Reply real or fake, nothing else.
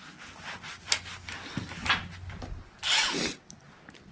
real